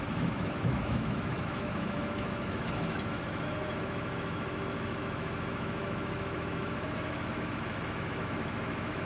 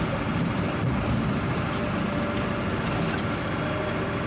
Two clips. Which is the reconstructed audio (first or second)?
first